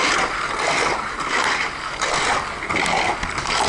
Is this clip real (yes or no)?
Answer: yes